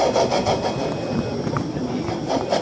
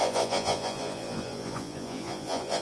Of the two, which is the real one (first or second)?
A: first